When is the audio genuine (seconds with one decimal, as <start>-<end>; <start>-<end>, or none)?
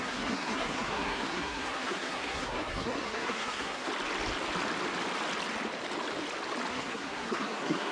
3.9-6.7